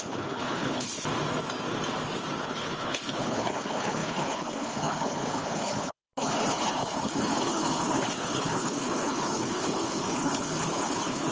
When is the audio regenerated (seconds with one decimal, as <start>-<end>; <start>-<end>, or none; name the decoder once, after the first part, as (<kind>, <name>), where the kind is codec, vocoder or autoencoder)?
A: 0.0-0.9 (codec, HILCodec); 2.4-11.3